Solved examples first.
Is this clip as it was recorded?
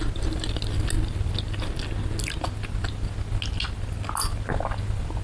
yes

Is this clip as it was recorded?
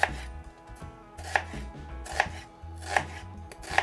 yes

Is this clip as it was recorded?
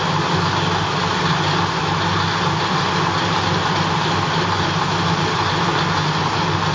yes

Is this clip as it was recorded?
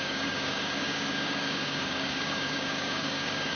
no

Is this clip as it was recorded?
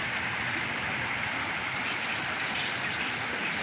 yes